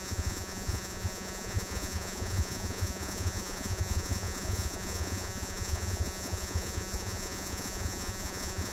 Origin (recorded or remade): remade